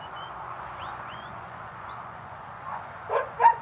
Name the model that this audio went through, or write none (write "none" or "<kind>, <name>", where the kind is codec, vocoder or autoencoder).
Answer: vocoder, Vocos